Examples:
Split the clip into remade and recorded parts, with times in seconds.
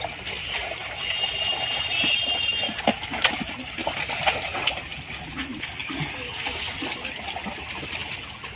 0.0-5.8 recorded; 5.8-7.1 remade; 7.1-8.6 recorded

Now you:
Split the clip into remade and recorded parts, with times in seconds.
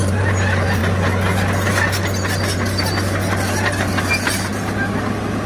0.0-0.8 remade; 0.8-4.1 recorded; 4.1-4.5 remade; 4.5-5.5 recorded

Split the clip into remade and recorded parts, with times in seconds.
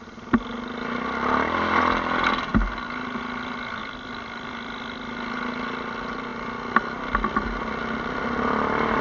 0.0-2.5 recorded; 2.5-3.2 remade; 3.2-3.8 recorded; 3.8-4.5 remade; 4.5-9.0 recorded